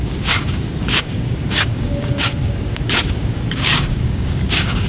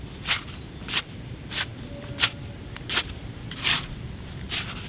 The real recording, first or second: second